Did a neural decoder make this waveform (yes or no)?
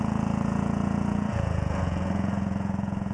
yes